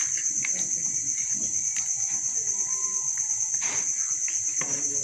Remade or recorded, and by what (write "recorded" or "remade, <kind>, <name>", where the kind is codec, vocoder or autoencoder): recorded